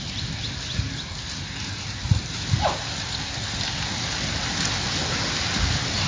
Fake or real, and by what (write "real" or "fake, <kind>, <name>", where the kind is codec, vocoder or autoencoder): real